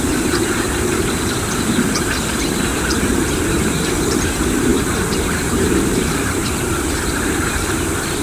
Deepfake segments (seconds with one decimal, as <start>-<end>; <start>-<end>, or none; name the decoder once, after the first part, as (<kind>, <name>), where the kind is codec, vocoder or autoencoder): 0.0-4.7 (vocoder, BigVGAN v2); 5.3-6.4; 7.1-8.2